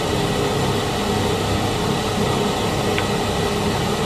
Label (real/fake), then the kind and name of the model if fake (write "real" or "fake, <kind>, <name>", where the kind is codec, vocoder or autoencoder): real